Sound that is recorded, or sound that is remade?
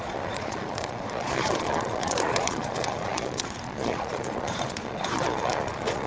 remade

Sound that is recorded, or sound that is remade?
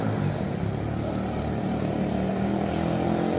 recorded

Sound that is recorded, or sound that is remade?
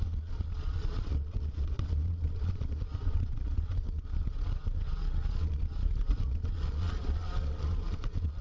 remade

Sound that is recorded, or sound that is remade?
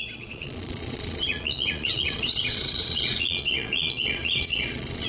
remade